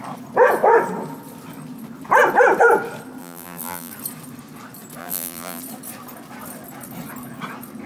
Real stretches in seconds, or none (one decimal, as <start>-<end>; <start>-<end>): 0.0-3.2; 3.9-5.0; 5.6-7.9